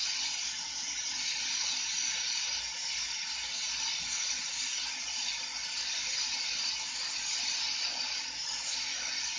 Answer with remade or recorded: recorded